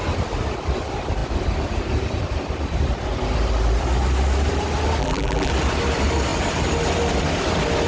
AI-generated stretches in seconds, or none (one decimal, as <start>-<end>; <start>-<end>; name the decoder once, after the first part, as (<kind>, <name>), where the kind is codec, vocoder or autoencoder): 5.0-5.5 (vocoder, BigVGAN v2)